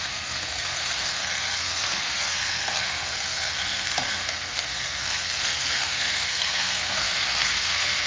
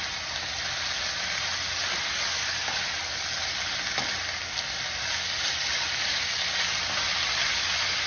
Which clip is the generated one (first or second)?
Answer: first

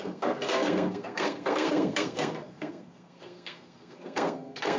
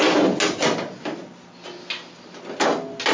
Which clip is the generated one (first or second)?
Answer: first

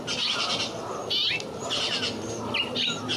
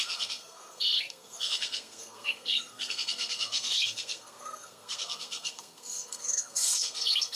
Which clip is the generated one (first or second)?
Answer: second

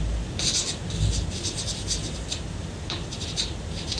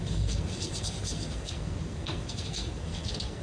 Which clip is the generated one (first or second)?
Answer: second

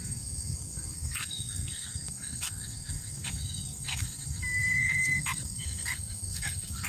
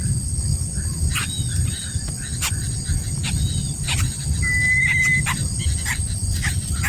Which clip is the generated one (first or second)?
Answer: first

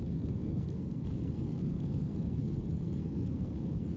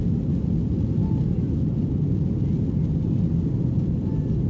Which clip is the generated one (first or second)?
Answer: first